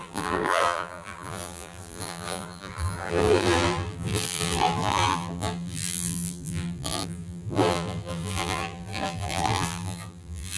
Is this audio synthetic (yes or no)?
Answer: yes